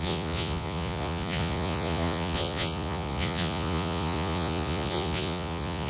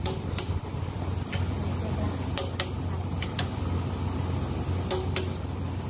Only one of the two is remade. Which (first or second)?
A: first